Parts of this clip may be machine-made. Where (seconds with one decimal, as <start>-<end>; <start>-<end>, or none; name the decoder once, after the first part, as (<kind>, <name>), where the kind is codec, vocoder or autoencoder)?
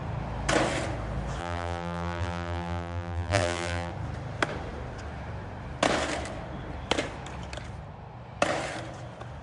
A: 1.4-3.9 (vocoder, BigVGAN v2)